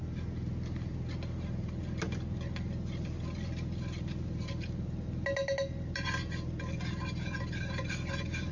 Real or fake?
real